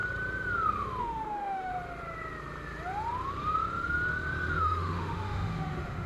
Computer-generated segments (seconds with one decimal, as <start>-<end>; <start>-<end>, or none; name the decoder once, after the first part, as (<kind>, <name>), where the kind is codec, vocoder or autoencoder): 1.0-1.7 (autoencoder, DAC-VAE); 4.6-6.1